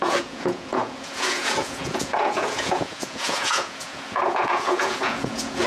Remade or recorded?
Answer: remade